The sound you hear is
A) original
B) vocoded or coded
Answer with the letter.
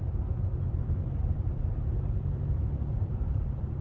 B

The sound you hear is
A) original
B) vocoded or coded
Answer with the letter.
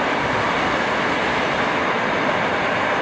A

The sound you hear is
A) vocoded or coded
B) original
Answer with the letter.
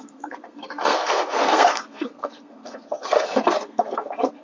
A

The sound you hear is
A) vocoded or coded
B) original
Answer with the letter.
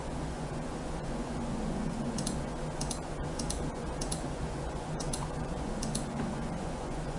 A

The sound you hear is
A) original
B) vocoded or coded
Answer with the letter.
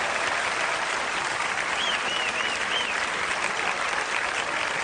B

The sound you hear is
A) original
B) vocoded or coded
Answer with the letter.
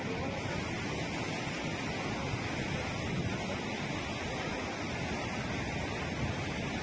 A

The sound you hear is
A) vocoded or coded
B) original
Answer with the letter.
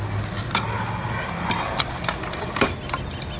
B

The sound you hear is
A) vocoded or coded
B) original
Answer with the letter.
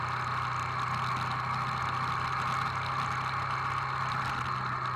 B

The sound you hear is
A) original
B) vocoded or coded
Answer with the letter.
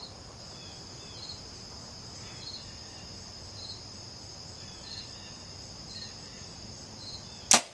A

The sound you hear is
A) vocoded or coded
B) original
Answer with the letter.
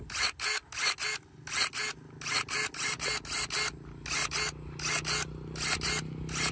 B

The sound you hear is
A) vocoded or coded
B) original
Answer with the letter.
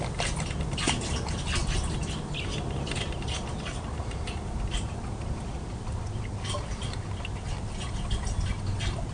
B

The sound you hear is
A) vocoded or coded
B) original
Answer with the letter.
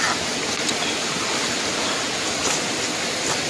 B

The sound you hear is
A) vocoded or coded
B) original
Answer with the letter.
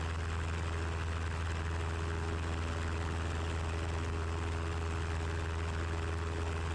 B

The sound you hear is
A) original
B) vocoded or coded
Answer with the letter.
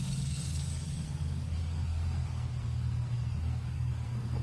B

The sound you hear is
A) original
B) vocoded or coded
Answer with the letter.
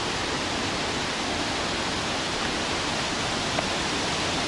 A